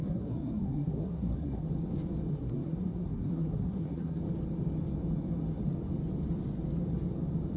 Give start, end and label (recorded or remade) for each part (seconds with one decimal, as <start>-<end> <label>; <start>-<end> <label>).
0.0-1.7 remade; 1.7-2.3 recorded; 2.3-4.2 remade; 4.2-7.6 recorded